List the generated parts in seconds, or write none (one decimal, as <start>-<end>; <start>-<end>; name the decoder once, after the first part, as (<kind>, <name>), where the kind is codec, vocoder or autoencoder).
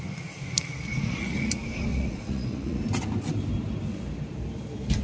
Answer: 0.9-1.5 (vocoder, Vocos); 1.9-2.8